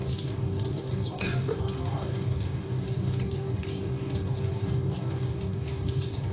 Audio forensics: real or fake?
fake